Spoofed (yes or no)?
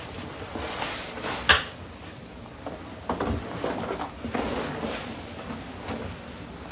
no